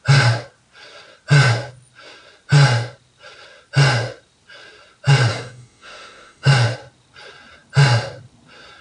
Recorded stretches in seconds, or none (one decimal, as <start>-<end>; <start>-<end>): 0.0-5.3; 6.5-8.8